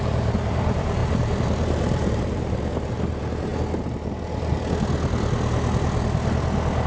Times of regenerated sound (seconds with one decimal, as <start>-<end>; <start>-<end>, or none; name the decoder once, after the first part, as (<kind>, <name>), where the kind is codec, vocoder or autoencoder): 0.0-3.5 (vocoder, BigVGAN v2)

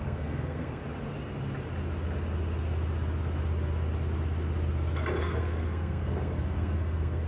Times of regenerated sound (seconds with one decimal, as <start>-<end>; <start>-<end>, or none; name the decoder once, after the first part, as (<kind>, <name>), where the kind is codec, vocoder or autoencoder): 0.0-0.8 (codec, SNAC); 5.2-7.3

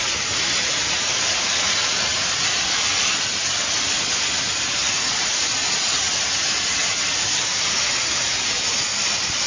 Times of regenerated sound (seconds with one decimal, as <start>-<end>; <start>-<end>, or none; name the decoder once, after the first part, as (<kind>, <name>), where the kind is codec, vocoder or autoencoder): none

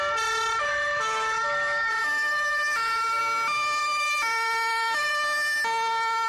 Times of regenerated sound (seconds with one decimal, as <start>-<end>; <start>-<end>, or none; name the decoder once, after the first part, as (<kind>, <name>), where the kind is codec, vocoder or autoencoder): 0.6-3.2 (autoencoder, DAC-VAE); 3.8-5.1